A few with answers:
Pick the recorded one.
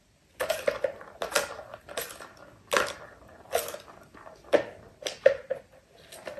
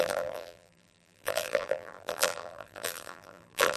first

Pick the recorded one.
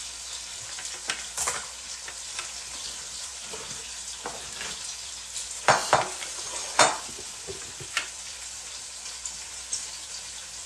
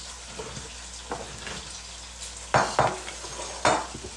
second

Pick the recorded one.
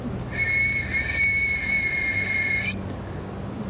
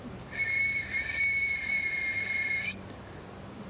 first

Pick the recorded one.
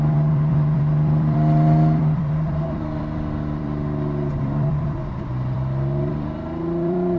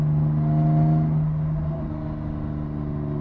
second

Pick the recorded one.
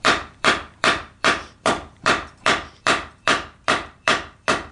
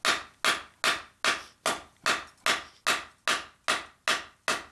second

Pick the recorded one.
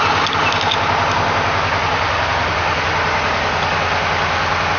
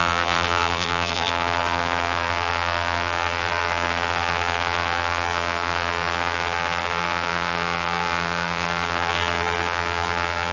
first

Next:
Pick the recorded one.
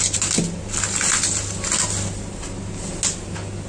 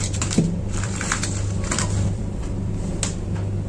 first